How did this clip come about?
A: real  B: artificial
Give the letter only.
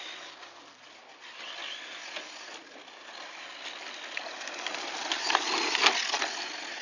A